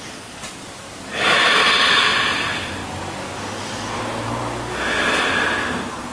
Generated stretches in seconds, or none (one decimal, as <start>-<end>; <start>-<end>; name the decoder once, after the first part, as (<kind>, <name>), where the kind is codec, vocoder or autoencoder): none